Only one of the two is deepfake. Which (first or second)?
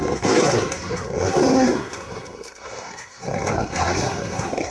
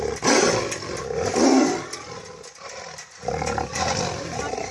first